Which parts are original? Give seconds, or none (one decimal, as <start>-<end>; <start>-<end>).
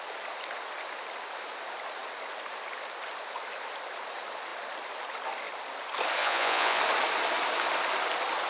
0.0-6.2; 6.8-8.5